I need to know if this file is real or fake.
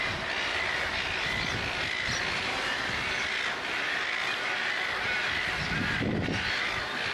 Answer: real